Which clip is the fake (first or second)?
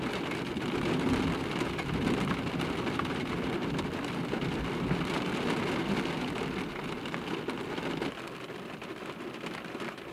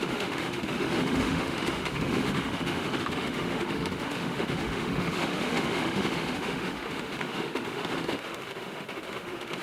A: second